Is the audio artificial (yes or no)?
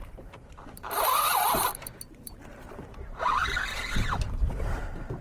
yes